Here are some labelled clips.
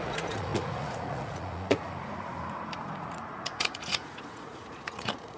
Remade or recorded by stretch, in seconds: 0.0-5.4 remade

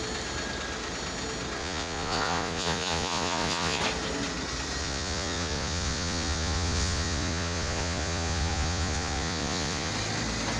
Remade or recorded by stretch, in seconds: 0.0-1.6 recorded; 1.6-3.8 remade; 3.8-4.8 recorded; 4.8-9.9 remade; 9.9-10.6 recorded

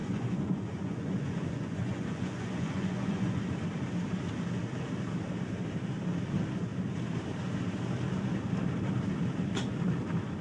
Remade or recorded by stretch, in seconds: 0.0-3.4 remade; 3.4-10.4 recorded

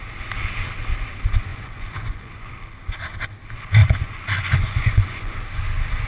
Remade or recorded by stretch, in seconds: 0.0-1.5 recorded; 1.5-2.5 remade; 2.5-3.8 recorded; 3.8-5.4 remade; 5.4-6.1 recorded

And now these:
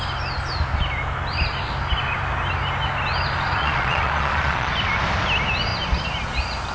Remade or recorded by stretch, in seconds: 0.0-3.6 recorded; 3.6-4.7 remade; 4.7-6.7 recorded